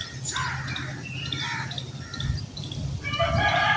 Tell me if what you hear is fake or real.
real